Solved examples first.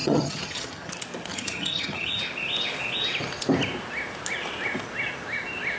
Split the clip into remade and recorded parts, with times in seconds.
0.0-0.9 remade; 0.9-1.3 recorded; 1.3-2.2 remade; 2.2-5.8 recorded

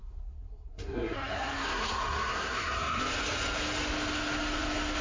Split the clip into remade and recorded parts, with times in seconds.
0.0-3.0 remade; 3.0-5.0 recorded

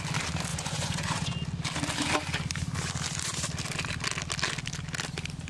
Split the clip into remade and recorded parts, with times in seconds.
0.0-0.5 recorded; 0.5-1.3 remade; 1.3-5.5 recorded

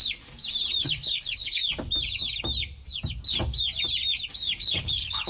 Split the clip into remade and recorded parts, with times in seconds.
0.0-0.8 recorded; 0.8-1.6 remade; 1.6-4.6 recorded; 4.6-5.3 remade

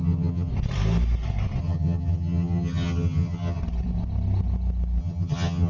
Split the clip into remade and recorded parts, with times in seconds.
0.0-0.5 remade; 0.5-1.6 recorded; 1.6-3.6 remade; 3.6-5.0 recorded; 5.0-5.7 remade